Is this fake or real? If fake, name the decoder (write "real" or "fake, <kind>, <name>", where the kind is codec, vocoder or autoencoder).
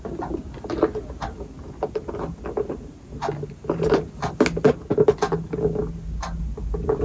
real